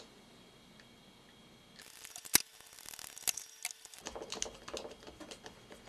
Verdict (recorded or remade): recorded